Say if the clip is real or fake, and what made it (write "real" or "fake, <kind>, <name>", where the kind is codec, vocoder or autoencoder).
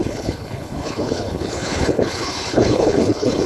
fake, codec, HILCodec